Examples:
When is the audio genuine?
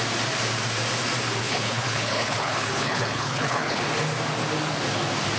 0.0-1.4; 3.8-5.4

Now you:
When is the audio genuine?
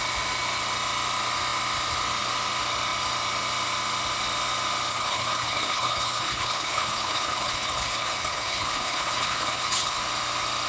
0.0-4.9; 10.0-10.7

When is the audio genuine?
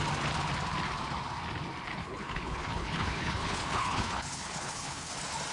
0.0-1.9; 5.1-5.5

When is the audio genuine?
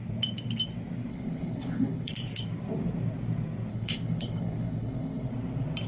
0.0-1.1; 2.1-3.7; 5.3-5.9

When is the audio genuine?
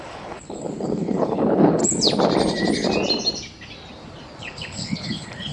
1.8-4.4